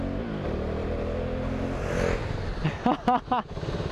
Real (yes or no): yes